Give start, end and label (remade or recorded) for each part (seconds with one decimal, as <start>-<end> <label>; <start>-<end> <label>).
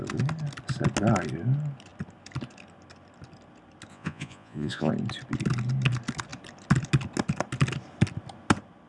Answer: 0.0-3.9 recorded; 3.9-4.9 remade; 4.9-8.9 recorded